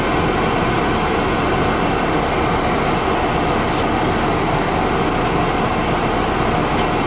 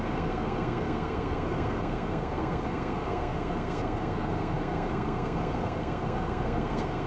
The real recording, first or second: first